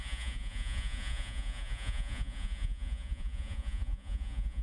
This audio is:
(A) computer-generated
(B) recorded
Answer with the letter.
A